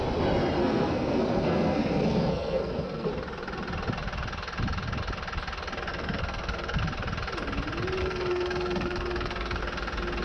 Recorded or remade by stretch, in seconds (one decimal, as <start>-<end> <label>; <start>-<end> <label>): 0.0-0.6 recorded; 0.6-3.1 remade; 3.1-5.9 recorded; 5.9-6.8 remade; 6.8-8.0 recorded; 8.0-9.6 remade; 9.6-10.2 recorded